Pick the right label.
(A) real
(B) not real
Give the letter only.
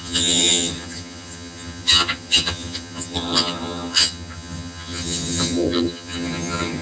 B